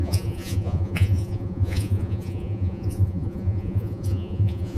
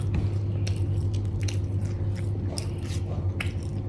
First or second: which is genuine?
second